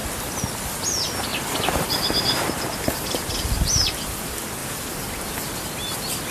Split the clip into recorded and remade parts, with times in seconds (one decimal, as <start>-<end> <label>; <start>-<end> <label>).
0.0-1.3 recorded; 1.3-3.9 remade; 3.9-4.6 recorded; 4.6-5.6 remade; 5.6-6.3 recorded

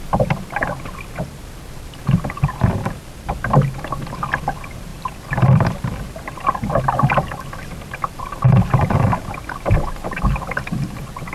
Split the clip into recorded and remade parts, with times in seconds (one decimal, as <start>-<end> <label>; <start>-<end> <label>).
0.0-11.3 recorded